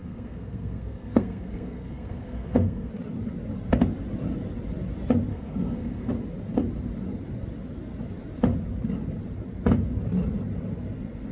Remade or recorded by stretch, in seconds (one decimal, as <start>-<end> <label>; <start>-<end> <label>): 0.0-2.9 remade; 2.9-5.3 recorded; 5.3-6.1 remade; 6.1-11.3 recorded